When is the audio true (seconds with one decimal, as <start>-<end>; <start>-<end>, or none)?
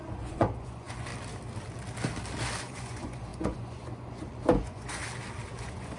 1.1-2.6; 5.0-5.6